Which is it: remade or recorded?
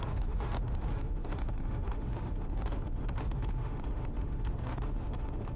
remade